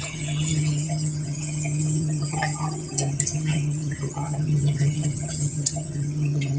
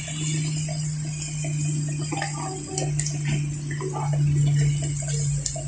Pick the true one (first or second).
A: second